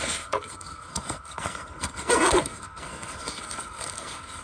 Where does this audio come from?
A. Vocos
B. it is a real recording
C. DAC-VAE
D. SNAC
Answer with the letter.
D